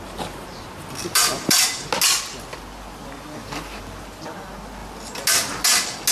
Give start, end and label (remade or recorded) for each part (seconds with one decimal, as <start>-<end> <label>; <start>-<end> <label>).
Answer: 0.0-6.1 recorded